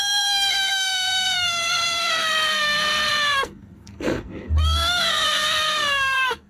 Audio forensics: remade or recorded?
remade